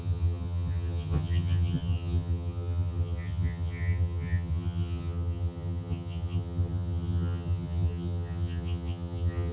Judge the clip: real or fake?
fake